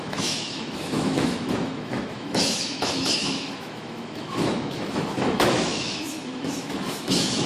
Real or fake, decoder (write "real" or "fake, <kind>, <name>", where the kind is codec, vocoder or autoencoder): fake, autoencoder, DAC-VAE